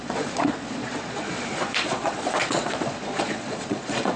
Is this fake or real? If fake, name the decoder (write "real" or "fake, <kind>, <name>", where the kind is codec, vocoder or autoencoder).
fake, vocoder, Vocos